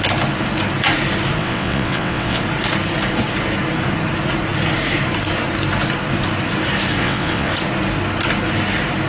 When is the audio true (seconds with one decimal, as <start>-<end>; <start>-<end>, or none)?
0.0-1.4; 2.4-7.0; 7.5-9.1